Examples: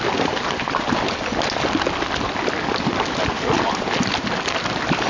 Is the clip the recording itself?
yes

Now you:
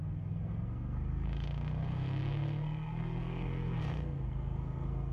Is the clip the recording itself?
no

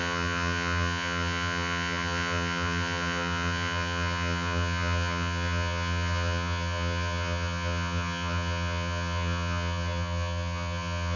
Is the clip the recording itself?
no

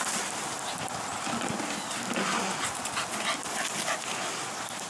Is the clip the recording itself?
yes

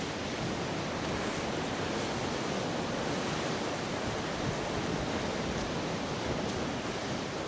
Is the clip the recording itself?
yes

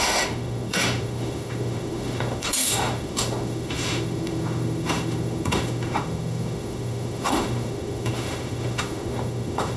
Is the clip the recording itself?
no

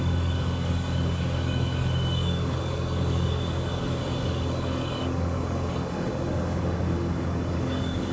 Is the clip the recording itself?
no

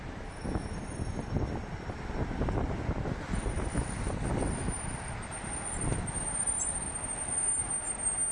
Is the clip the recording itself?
yes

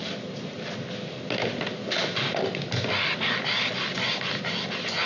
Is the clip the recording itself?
yes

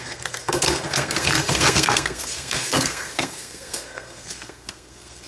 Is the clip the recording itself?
no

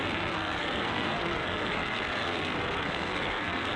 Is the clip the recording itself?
no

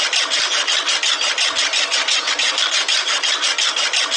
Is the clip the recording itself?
yes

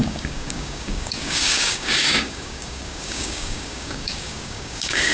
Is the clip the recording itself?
no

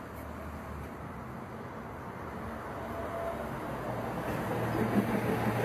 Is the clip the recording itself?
yes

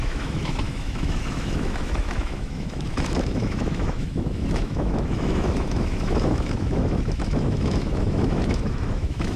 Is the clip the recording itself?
no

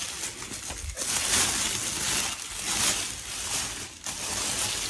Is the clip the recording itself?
yes